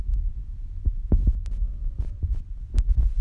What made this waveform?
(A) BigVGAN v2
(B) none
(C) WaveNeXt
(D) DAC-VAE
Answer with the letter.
B